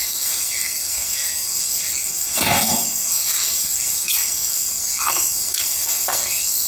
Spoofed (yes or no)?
yes